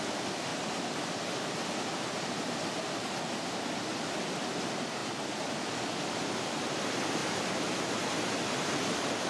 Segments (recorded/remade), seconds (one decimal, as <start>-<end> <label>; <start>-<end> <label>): 0.0-0.5 recorded; 0.5-1.2 remade; 1.2-9.3 recorded